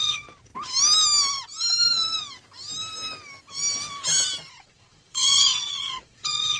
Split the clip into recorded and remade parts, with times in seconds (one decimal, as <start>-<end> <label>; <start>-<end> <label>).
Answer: 0.0-0.5 remade; 0.5-4.5 recorded; 4.5-6.6 remade

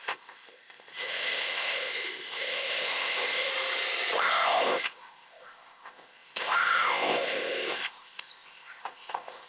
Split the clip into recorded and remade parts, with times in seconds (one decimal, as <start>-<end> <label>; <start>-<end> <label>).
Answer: 0.0-3.5 remade; 3.5-4.2 recorded; 4.2-9.5 remade

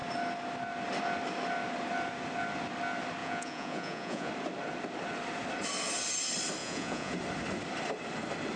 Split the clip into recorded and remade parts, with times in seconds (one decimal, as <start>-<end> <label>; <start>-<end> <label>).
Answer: 0.0-3.2 recorded; 3.2-4.3 remade; 4.3-6.6 recorded; 6.6-7.1 remade; 7.1-8.6 recorded

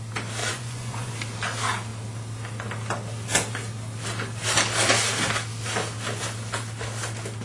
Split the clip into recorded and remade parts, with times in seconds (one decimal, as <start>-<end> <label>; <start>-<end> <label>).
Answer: 0.0-0.4 recorded; 0.4-1.1 remade; 1.1-7.4 recorded